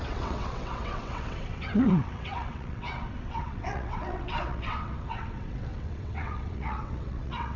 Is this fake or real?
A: fake